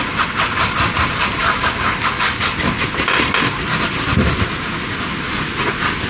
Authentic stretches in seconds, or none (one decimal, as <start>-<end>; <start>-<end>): 0.0-1.4; 2.5-6.1